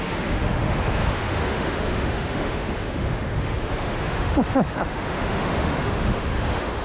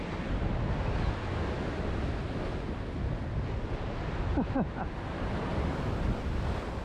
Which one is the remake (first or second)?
first